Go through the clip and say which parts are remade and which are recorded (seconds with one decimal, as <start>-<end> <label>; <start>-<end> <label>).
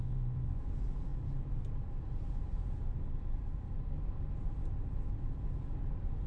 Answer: 0.0-0.6 remade; 0.6-6.3 recorded